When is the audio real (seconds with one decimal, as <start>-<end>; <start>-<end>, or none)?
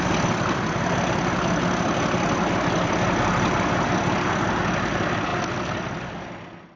0.0-6.8